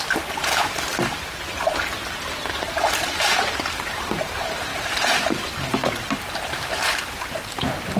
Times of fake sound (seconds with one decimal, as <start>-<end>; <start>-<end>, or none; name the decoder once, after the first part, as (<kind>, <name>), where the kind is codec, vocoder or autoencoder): 0.0-8.0 (vocoder, BigVGAN v2)